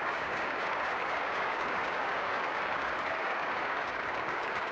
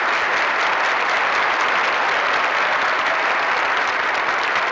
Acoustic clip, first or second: second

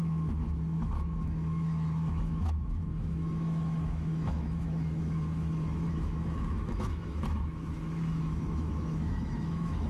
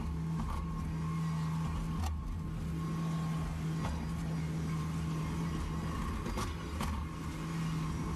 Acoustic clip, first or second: second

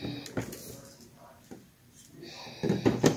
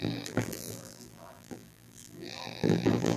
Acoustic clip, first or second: first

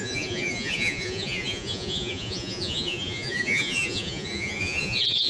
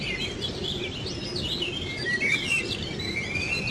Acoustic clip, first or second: second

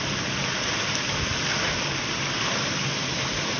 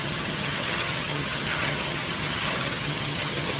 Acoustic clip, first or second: first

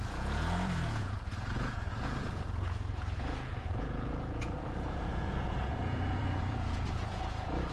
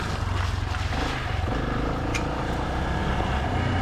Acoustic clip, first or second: second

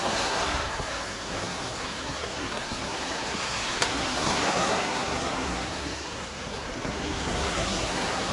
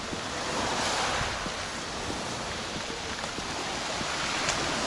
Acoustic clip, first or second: second